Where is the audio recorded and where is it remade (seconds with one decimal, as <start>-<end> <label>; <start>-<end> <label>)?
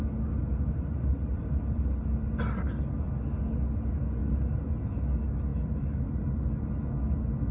0.0-0.4 recorded; 0.4-2.1 remade; 2.1-4.2 recorded; 4.2-4.7 remade; 4.7-5.5 recorded; 5.5-6.4 remade; 6.4-7.5 recorded